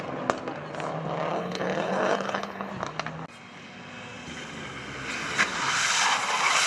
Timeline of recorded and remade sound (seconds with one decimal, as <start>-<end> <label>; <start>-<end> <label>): 0.0-1.3 recorded; 1.3-2.7 remade; 2.7-6.7 recorded